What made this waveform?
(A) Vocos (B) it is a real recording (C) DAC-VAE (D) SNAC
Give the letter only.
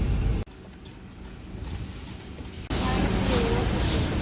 B